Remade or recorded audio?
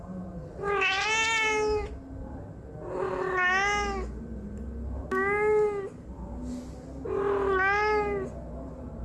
recorded